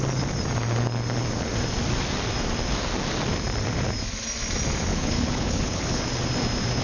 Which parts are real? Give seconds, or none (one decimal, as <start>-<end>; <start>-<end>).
0.0-4.9; 6.0-6.8

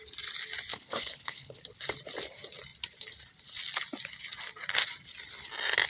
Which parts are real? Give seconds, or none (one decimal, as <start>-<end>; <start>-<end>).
0.0-0.7; 1.6-5.9

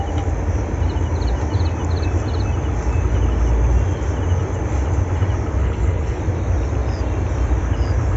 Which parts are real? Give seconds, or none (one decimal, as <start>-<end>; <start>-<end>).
0.0-5.6; 6.2-8.2

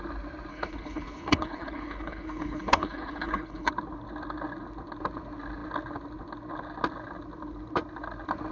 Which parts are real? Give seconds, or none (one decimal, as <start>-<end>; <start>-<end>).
0.0-0.5; 3.7-8.5